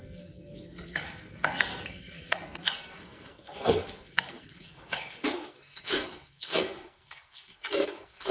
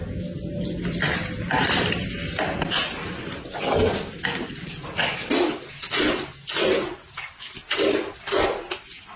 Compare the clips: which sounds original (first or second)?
second